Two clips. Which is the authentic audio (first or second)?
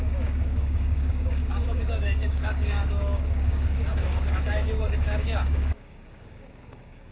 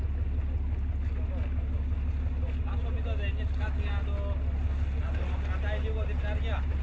second